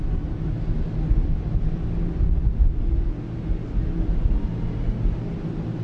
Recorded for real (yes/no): yes